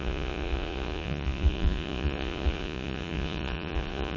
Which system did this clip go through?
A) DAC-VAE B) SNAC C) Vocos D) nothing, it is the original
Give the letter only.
C